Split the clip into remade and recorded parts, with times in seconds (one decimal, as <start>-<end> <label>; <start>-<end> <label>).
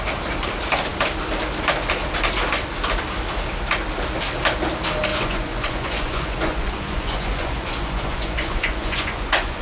0.0-5.1 recorded; 5.1-9.6 remade